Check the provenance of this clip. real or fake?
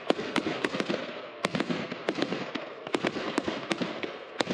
fake